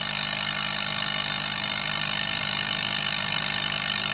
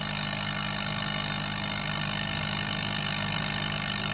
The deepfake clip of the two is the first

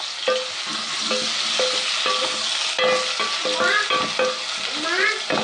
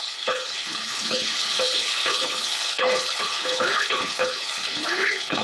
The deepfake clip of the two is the second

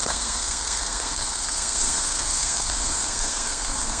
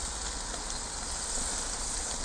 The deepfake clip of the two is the first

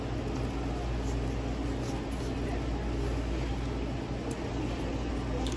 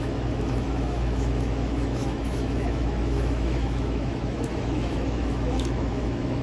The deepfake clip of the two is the second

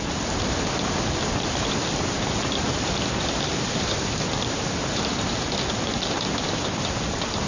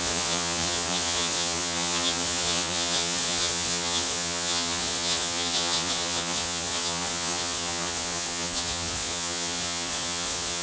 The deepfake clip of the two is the second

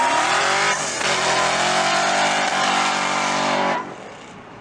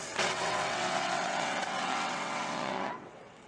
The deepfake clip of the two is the second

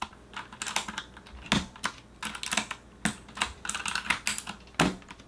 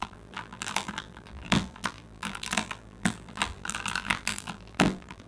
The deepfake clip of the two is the second